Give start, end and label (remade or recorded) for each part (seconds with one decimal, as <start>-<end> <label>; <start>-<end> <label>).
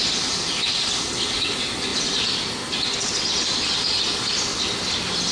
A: 0.0-0.8 remade; 0.8-5.3 recorded